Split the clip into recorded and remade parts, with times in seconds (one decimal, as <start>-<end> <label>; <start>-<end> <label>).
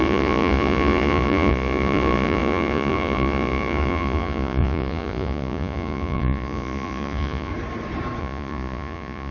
0.0-7.5 remade; 7.5-8.2 recorded; 8.2-9.3 remade